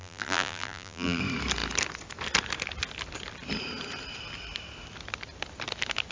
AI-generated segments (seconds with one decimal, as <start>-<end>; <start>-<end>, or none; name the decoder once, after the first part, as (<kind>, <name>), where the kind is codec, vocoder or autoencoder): 0.0-1.2 (vocoder, BigVGAN v2)